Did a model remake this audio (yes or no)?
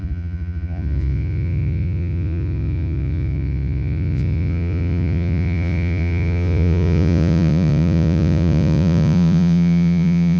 yes